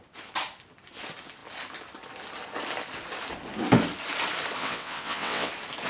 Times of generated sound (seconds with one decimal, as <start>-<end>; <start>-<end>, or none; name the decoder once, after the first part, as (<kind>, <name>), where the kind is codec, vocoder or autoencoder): 4.6-5.5 (vocoder, WaveNeXt)